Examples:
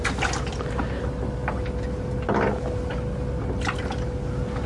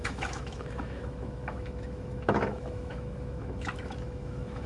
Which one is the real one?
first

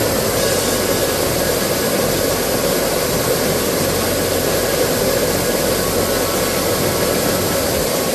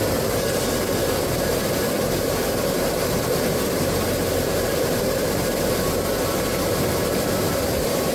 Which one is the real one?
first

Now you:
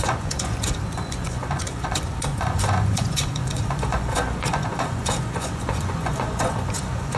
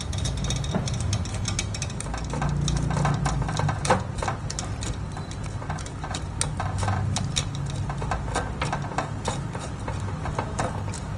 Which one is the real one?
second